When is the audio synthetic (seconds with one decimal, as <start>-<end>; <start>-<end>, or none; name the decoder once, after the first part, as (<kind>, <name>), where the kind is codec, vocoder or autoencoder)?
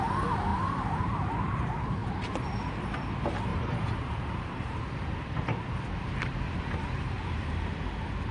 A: 0.5-1.1 (vocoder, BigVGAN v2); 3.5-7.5